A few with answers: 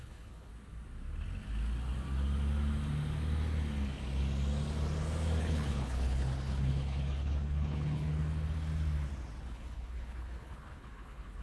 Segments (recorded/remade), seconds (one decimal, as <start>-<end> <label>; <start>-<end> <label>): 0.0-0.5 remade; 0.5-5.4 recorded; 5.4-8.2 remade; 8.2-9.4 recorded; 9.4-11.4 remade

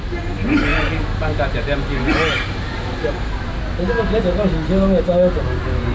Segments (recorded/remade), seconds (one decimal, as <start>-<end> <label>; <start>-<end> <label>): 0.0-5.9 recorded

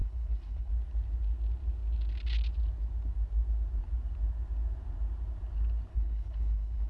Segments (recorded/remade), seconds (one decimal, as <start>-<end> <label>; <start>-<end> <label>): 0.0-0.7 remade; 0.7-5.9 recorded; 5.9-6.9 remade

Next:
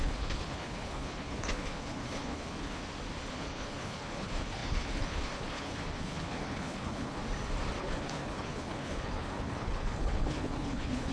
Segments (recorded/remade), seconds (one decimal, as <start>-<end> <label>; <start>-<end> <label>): 0.0-2.8 remade; 2.8-3.3 recorded; 3.3-7.2 remade; 7.2-7.8 recorded; 7.8-11.1 remade

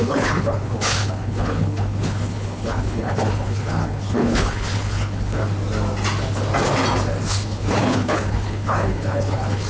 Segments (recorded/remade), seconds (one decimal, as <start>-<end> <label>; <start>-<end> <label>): 0.0-5.4 remade; 5.4-7.3 recorded; 7.3-9.7 remade

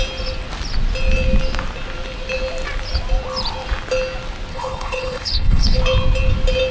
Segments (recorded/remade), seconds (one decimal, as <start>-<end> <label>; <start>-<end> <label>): 0.0-4.5 recorded; 4.5-5.8 remade; 5.8-6.7 recorded